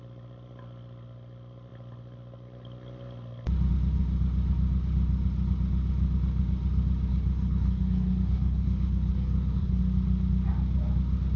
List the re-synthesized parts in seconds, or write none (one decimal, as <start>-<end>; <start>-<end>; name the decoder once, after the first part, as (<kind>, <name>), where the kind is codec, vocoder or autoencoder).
7.1-9.8 (codec, HILCodec)